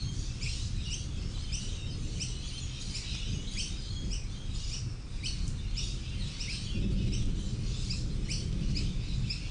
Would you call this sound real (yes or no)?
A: yes